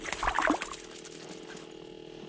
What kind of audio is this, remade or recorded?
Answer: recorded